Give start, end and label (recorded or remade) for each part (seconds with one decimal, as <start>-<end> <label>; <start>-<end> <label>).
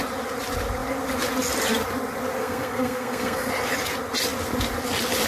0.0-2.4 recorded; 2.4-3.5 remade; 3.5-5.3 recorded